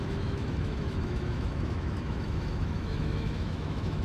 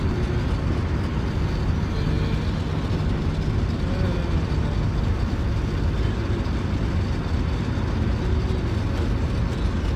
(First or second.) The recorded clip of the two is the second